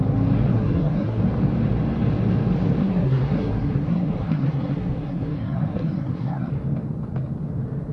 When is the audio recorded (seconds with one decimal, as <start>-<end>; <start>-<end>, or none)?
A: 0.0-0.5; 1.2-2.8; 6.5-7.9